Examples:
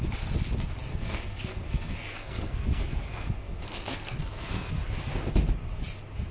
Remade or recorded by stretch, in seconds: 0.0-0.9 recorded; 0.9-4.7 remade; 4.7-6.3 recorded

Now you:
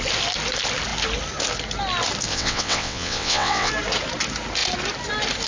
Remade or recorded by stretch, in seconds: 0.0-2.3 recorded; 2.3-3.7 remade; 3.7-5.5 recorded

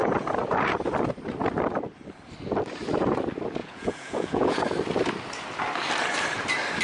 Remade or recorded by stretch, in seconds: 0.0-3.6 recorded; 3.6-4.6 remade; 4.6-6.8 recorded

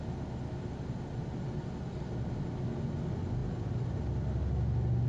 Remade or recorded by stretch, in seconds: 0.0-5.1 recorded

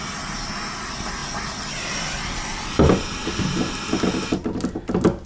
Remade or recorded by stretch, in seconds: 0.0-5.3 recorded

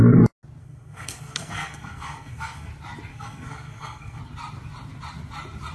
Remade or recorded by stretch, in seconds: 0.0-0.6 recorded; 0.6-2.7 remade; 2.7-3.1 recorded; 3.1-4.2 remade; 4.2-5.7 recorded

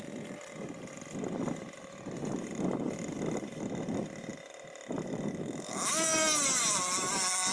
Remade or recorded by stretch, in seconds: 0.0-7.5 recorded